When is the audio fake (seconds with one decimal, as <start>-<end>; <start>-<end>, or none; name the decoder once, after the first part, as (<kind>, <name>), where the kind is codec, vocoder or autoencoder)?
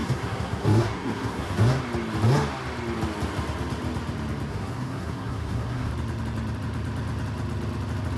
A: 0.0-1.8 (codec, SNAC); 4.5-5.9